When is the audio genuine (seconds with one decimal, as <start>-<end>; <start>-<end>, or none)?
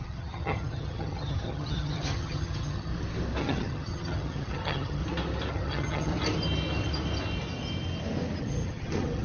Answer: 2.9-3.4; 5.0-5.5; 6.1-8.4